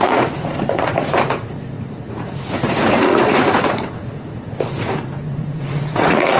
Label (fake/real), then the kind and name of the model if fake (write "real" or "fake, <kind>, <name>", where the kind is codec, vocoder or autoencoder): fake, vocoder, Vocos